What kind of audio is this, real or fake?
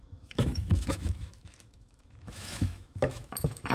fake